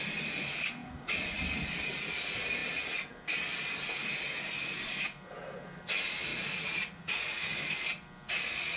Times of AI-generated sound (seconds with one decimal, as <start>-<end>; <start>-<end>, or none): 0.8-1.4; 6.3-7.6